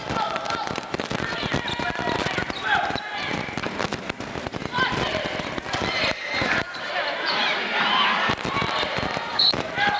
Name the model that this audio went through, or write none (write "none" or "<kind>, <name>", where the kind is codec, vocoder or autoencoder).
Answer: vocoder, BigVGAN v2